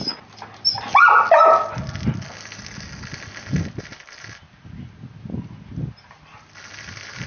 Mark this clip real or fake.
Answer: real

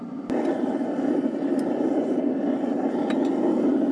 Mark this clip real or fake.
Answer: real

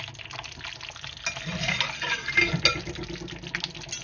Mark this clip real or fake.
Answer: real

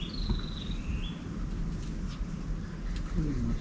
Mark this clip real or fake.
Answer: real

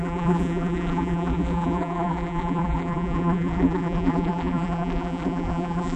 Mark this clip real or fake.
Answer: fake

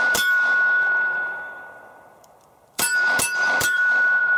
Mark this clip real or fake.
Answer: fake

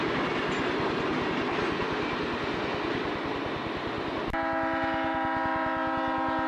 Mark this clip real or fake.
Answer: real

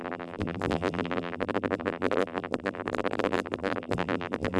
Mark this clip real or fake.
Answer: fake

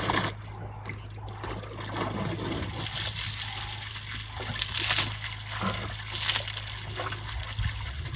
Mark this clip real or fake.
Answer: real